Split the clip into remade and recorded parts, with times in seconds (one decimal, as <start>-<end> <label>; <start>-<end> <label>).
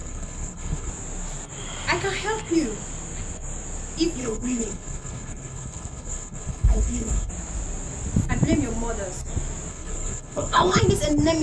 0.0-0.9 remade; 0.9-4.2 recorded; 4.2-7.3 remade; 7.3-9.7 recorded; 9.7-10.8 remade; 10.8-11.4 recorded